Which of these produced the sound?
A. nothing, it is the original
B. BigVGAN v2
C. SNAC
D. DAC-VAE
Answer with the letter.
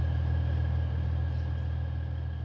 A